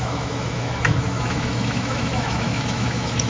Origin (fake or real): fake